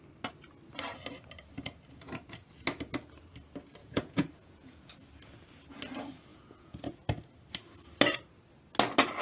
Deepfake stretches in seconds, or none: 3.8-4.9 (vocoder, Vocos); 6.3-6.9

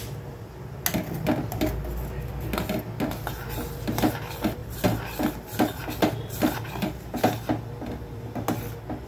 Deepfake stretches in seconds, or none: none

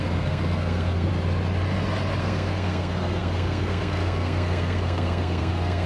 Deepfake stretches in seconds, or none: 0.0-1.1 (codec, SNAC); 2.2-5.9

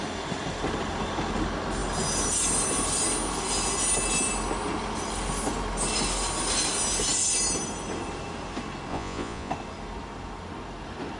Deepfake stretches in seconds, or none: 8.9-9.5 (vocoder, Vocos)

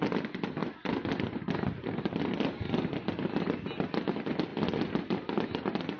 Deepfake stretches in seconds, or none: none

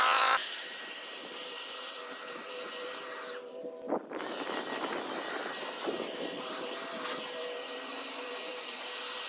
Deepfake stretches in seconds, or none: 0.0-9.3 (vocoder, BigVGAN v2)